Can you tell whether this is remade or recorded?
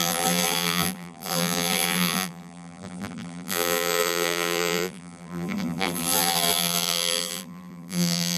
remade